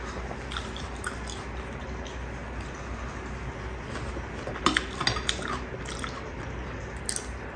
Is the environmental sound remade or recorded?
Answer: recorded